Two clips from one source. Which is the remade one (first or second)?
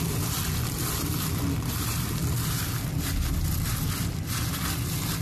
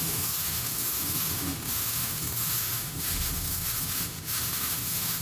second